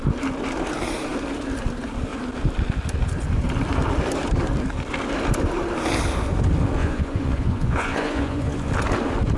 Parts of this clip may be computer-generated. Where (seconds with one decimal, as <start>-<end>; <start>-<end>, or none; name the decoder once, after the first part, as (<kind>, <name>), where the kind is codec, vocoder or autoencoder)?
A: 6.8-8.7 (vocoder, Vocos)